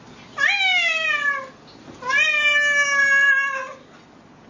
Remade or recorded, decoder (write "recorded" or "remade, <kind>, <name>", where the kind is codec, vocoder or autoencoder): recorded